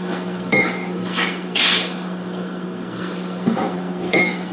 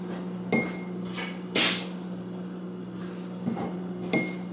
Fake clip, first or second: first